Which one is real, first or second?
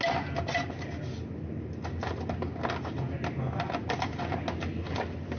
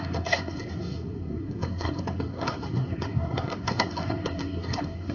first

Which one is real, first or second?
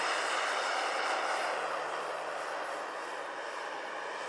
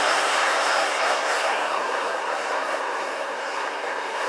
first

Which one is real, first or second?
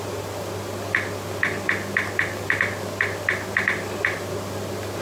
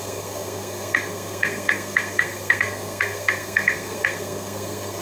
first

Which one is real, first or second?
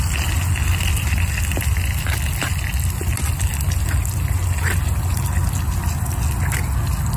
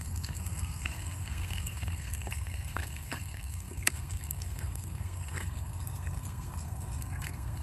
first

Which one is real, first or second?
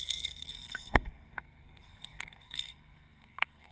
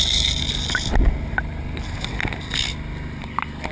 second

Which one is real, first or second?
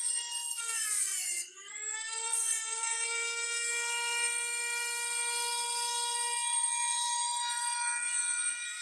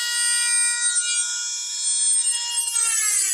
second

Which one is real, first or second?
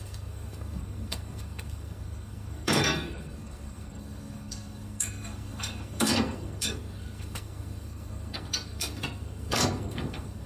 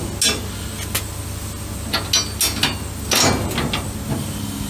second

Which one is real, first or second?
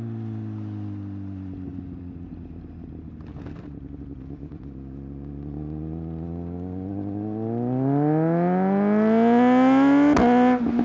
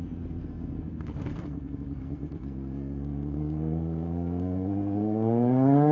first